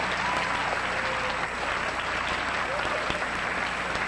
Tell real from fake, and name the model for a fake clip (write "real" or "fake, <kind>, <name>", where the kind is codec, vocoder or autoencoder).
real